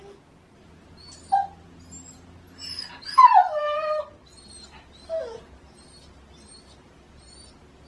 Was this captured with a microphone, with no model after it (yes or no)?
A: yes